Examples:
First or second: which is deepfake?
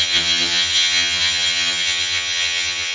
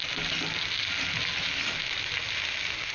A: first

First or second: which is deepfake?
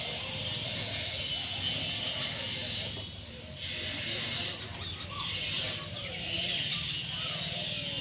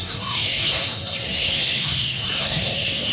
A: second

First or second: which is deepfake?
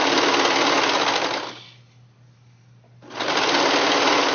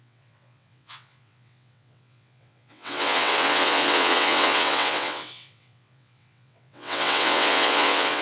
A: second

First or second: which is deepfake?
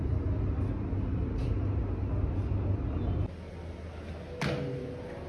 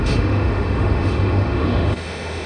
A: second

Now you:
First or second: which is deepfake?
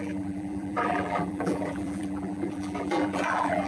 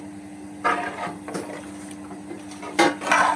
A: first